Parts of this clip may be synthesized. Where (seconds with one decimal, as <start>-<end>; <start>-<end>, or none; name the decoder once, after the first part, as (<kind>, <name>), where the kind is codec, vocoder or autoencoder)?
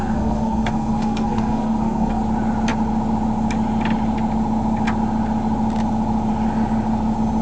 0.0-2.2 (codec, SNAC)